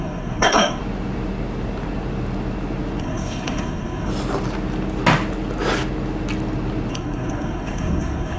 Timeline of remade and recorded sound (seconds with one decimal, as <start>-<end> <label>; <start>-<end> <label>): 0.0-0.8 remade; 0.8-3.0 recorded; 3.0-4.1 remade; 4.1-6.9 recorded; 6.9-8.4 remade